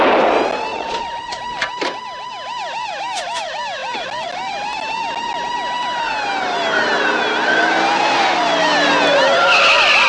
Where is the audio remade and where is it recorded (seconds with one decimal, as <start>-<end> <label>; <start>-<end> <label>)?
0.0-0.7 recorded; 0.7-1.4 remade; 1.4-10.1 recorded